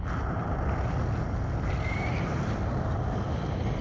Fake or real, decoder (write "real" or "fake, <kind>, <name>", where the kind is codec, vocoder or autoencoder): real